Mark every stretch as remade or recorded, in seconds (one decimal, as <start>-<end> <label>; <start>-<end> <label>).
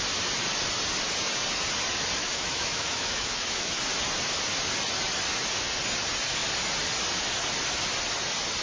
0.0-2.2 recorded; 2.2-3.8 remade; 3.8-8.6 recorded